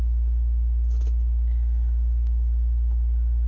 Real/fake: real